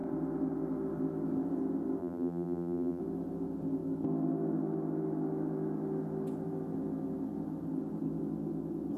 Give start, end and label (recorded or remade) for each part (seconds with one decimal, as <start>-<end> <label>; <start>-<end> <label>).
0.0-2.0 recorded; 2.0-3.0 remade; 3.0-9.0 recorded